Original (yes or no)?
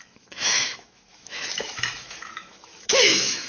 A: no